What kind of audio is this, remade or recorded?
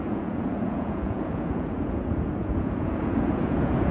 remade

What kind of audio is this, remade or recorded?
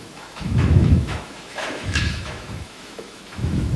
remade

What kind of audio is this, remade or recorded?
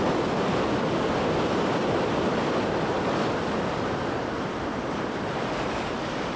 recorded